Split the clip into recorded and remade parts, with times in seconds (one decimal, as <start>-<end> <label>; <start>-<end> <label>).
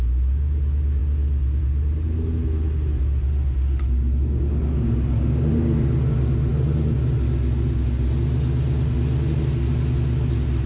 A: 0.0-10.7 recorded